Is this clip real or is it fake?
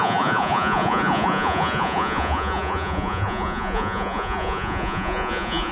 fake